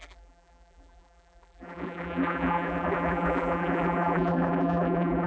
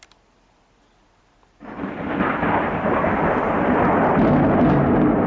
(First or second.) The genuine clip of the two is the second